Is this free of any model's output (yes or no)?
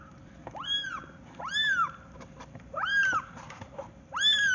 no